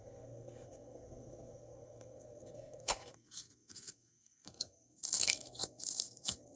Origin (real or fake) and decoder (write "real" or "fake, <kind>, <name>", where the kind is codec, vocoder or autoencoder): fake, codec, SNAC